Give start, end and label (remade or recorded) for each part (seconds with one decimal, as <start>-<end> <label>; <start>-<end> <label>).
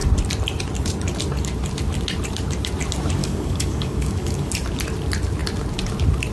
0.0-3.2 recorded; 3.2-4.5 remade; 4.5-6.3 recorded